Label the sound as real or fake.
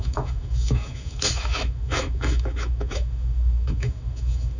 fake